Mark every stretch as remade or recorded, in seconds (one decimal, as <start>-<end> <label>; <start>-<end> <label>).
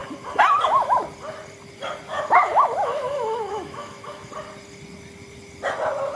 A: 0.0-2.1 recorded; 2.1-4.3 remade; 4.3-6.2 recorded